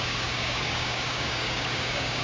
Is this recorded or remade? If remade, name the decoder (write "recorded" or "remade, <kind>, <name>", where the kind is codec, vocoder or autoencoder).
remade, codec, DAC